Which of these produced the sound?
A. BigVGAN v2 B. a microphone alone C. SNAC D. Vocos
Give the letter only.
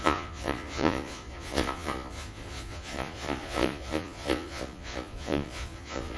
D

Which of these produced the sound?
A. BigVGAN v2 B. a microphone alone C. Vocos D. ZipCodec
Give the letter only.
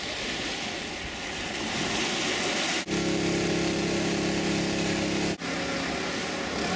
B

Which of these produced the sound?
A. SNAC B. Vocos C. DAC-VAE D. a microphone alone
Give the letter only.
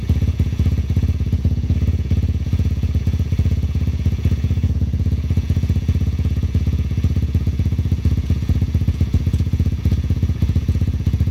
B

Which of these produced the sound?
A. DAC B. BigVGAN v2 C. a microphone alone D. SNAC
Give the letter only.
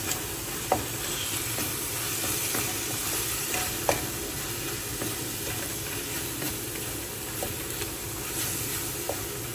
C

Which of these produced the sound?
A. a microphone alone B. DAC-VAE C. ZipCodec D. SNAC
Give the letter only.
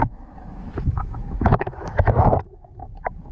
B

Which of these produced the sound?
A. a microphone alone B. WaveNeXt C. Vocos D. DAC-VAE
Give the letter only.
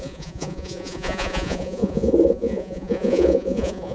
C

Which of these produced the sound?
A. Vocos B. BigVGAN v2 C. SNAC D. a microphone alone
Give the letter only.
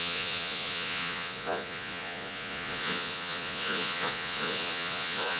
A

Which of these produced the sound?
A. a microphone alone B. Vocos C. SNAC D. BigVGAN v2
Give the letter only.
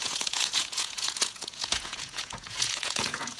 B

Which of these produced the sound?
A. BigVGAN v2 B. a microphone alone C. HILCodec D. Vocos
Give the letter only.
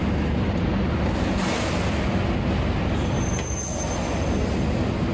B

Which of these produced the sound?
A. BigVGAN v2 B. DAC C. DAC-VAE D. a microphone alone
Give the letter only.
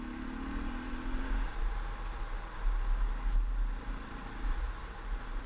D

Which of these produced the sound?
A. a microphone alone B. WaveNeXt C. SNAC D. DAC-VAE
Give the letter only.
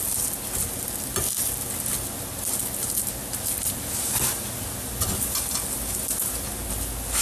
A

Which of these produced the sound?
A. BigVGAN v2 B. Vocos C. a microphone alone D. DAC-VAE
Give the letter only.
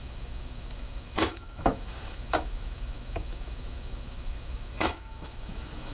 D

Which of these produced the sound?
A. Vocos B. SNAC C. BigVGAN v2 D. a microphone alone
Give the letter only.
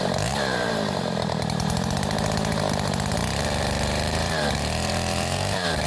C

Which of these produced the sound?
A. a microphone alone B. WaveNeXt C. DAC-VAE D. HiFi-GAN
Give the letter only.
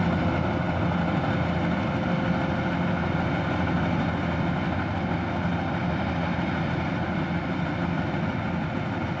A